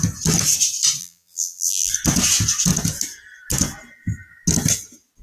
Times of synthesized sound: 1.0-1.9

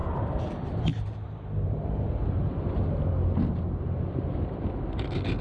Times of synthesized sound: 0.0-2.1

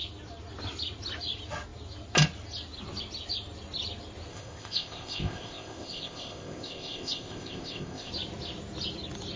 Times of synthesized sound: 4.3-8.1

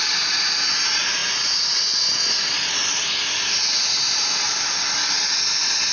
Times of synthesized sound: none

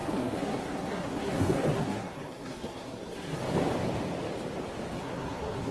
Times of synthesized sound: 0.0-3.4; 5.0-5.7

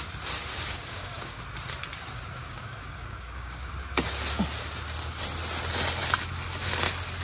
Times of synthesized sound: 0.5-1.4; 2.4-3.7